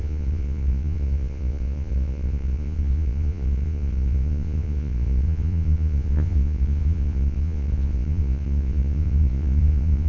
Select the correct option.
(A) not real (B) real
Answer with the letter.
A